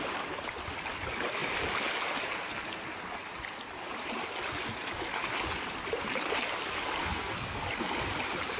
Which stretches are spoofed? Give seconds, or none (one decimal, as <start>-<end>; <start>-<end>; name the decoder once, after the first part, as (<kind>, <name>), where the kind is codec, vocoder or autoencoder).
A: 7.0-7.6 (codec, SNAC)